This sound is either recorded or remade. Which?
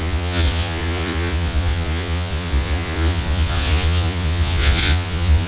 remade